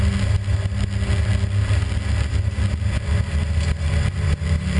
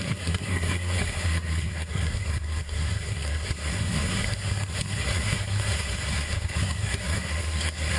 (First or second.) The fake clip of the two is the second